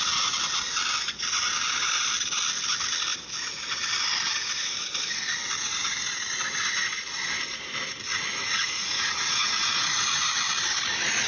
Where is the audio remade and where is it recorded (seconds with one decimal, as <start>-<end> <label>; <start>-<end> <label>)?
0.0-8.1 recorded; 8.1-10.3 remade; 10.3-11.3 recorded